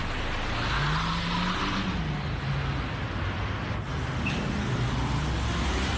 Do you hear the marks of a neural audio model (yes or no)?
no